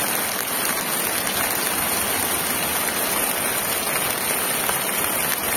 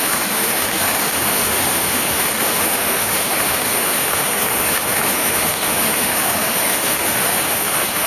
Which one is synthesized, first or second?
second